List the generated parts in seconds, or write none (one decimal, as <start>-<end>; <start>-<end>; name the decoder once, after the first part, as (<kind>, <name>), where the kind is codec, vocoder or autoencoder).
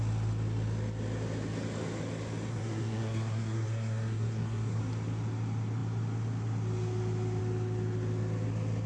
2.5-4.8 (codec, SNAC)